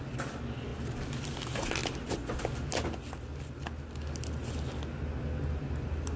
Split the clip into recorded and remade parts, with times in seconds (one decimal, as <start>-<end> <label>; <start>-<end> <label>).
0.0-6.2 recorded